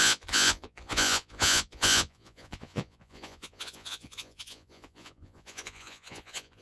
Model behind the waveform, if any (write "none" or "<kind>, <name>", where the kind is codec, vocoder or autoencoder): vocoder, Vocos